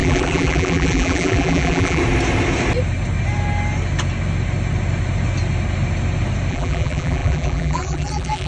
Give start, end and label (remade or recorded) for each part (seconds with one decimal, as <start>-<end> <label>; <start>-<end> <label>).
0.0-2.0 remade; 2.0-6.5 recorded; 6.5-8.5 remade